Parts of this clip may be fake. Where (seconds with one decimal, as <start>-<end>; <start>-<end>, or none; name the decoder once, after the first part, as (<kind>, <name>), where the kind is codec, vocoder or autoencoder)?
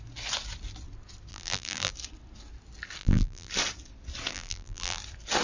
1.3-1.9 (vocoder, BigVGAN v2); 3.0-3.5; 4.3-5.0